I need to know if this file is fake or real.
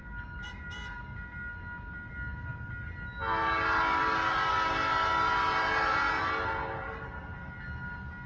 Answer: real